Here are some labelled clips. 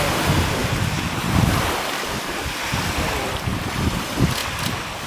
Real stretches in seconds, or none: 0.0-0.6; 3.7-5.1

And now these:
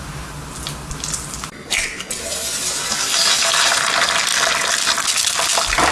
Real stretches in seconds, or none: 0.0-5.9

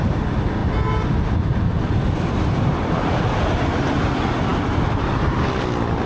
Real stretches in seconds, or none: 0.0-6.1